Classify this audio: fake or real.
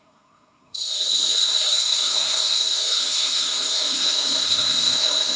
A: fake